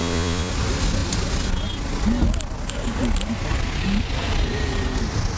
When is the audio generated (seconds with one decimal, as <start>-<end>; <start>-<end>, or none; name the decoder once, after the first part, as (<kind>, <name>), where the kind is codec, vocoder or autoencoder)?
0.0-0.5 (vocoder, Vocos)